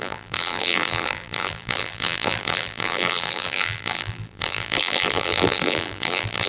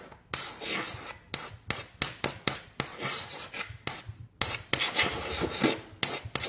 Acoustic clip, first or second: second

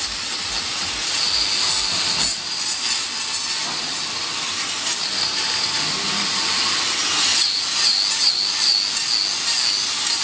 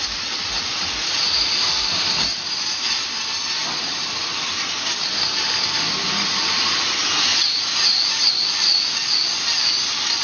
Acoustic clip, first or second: first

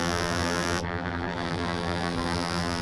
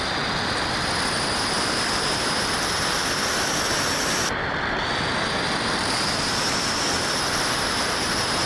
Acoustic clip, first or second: second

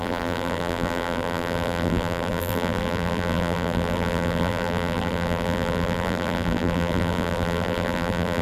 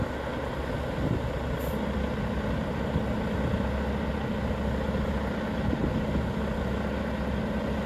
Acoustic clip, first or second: second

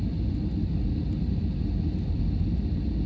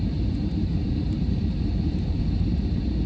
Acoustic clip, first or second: first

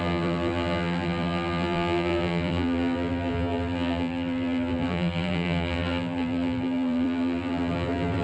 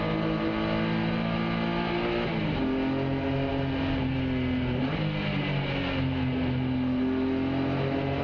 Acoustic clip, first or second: second